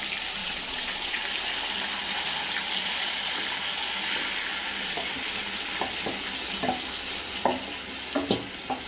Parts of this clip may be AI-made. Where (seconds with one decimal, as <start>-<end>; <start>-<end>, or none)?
0.4-1.2; 2.8-3.4